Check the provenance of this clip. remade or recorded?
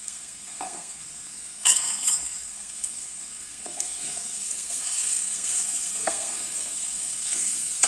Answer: remade